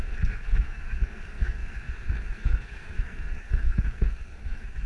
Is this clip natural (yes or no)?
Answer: no